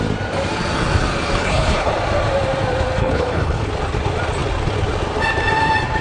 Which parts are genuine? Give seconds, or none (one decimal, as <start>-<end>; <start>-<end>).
0.0-1.4; 1.9-3.0; 3.7-6.0